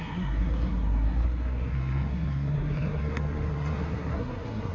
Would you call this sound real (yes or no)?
no